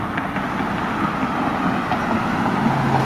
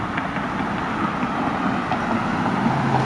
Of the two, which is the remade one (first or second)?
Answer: second